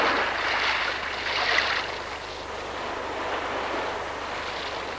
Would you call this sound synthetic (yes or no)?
no